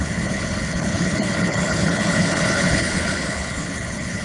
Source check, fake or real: fake